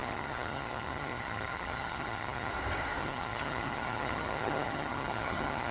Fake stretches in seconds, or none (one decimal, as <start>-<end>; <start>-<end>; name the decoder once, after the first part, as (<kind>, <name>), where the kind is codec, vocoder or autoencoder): 0.0-2.5 (vocoder, HiFi-GAN); 3.0-5.7